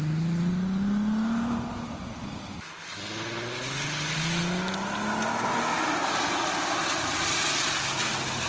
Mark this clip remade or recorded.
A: recorded